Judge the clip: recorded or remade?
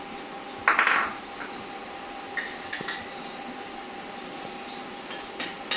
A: recorded